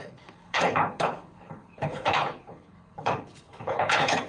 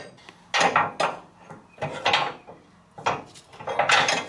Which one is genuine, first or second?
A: second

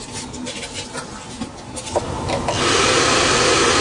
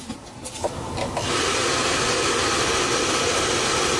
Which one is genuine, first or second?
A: first